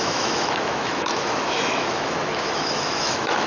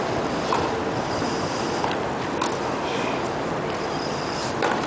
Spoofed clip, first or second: first